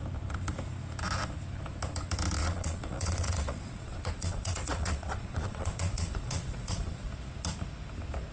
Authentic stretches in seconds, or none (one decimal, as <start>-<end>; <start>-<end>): 0.0-2.4; 7.1-8.3